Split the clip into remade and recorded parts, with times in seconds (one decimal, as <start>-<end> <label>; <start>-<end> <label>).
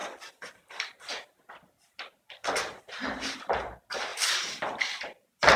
0.0-3.4 remade; 3.4-4.1 recorded; 4.1-4.8 remade; 4.8-5.6 recorded